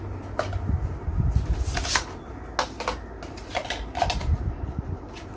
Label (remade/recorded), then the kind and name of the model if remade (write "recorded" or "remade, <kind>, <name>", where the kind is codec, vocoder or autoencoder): recorded